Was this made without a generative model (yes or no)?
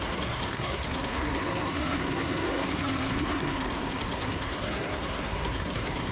no